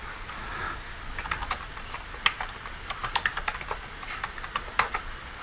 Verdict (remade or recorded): recorded